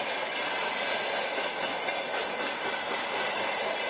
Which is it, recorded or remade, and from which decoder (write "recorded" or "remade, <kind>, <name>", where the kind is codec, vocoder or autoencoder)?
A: recorded